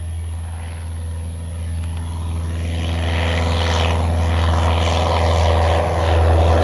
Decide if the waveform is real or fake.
real